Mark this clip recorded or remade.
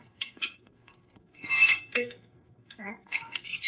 remade